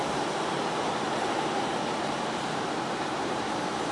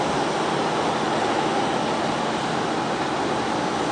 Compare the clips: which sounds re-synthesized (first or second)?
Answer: first